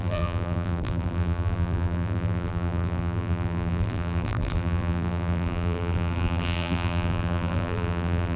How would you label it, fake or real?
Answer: fake